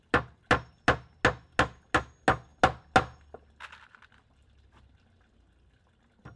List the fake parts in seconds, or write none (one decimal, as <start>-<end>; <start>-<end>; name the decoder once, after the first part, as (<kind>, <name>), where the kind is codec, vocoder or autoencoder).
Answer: none